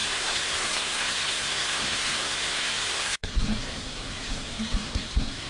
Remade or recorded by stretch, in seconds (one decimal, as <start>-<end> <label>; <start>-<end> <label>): 0.0-5.5 remade